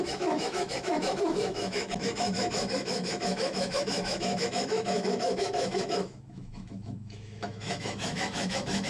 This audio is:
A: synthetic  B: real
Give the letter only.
A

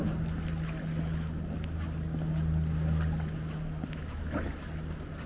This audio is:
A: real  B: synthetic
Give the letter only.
A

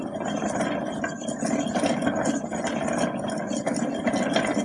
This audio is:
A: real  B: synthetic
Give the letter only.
A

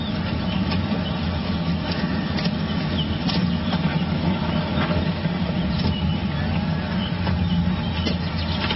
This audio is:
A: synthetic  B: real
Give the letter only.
B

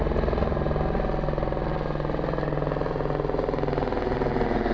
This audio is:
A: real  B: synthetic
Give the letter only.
A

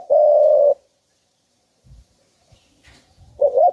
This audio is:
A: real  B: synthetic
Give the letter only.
B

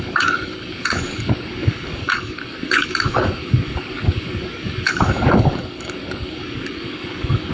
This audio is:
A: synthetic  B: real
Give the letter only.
A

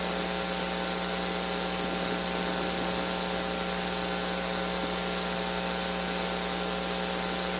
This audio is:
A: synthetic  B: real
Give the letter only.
B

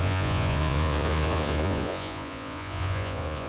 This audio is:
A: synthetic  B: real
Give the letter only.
A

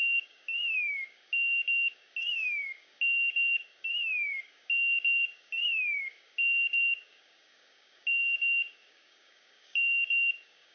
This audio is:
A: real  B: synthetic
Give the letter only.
B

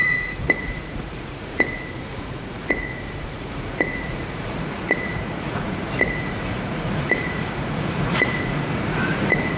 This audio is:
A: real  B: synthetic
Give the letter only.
B